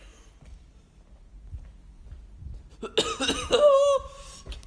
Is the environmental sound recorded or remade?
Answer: recorded